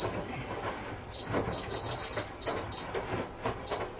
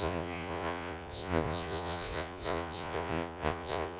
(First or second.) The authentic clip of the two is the first